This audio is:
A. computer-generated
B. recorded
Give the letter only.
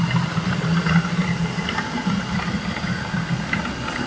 B